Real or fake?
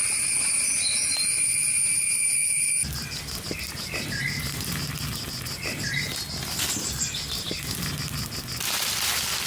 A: real